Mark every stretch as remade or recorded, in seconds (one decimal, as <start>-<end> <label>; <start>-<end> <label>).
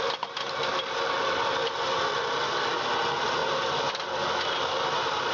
0.0-5.3 recorded